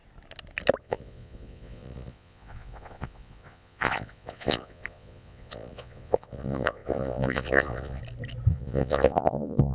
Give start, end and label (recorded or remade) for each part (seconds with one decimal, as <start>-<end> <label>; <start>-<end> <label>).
0.0-0.8 recorded; 0.8-8.0 remade; 8.0-8.5 recorded; 8.5-9.7 remade